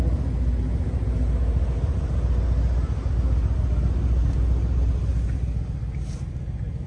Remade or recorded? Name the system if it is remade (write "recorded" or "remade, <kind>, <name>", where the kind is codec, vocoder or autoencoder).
recorded